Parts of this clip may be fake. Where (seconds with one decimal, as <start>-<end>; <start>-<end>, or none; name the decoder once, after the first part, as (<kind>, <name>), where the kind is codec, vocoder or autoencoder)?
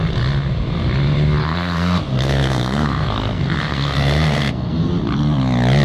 1.4-4.9 (codec, SNAC)